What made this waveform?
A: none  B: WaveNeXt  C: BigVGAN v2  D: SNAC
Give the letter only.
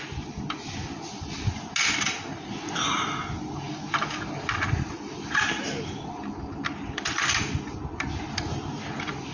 A